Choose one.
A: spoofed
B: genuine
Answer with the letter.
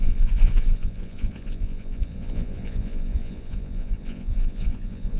A